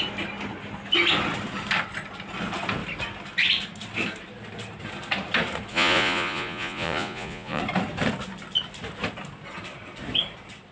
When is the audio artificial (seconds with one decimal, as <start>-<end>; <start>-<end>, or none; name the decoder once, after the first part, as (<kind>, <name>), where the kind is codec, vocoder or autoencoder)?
5.7-7.6 (vocoder, Vocos)